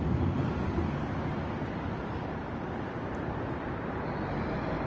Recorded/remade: recorded